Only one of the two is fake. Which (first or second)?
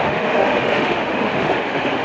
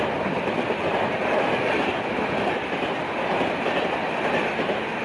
first